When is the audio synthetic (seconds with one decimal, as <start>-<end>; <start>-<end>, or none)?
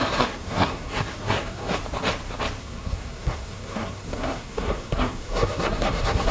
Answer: 0.0-1.8; 2.6-6.3